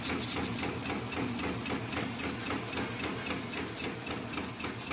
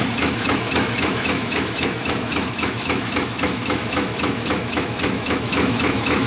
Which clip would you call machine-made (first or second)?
second